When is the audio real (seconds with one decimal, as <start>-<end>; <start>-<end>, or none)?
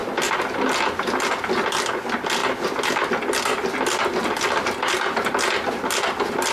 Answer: 0.0-6.5